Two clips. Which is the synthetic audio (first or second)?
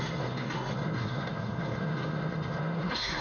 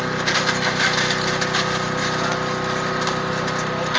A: first